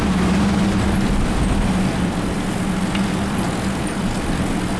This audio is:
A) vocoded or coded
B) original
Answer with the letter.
B